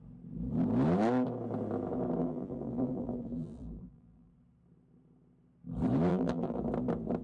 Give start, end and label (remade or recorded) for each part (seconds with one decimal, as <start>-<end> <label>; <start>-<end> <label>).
0.0-2.2 recorded; 2.2-4.3 remade; 4.3-6.1 recorded; 6.1-6.6 remade; 6.6-7.2 recorded